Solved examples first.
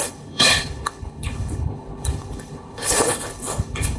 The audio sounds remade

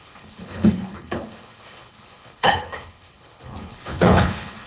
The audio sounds remade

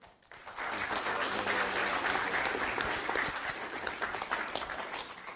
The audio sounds recorded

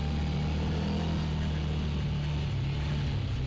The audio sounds recorded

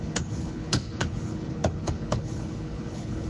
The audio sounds remade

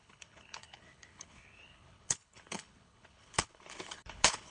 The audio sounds remade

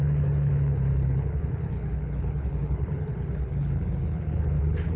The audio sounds remade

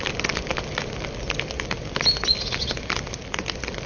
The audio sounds recorded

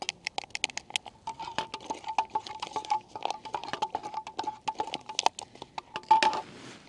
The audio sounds recorded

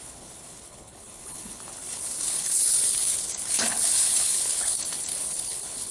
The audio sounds remade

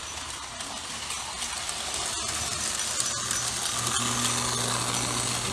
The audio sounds recorded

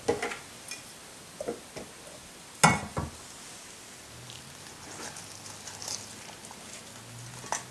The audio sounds recorded